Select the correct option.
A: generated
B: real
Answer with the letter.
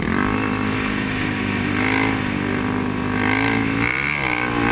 B